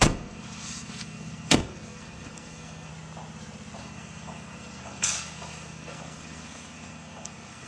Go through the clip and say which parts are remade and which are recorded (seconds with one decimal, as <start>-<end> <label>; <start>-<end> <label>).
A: 0.0-2.9 remade; 2.9-3.8 recorded; 3.8-7.7 remade